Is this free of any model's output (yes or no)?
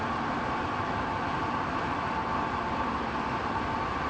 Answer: yes